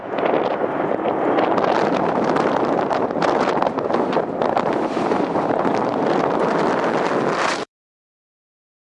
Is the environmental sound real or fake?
fake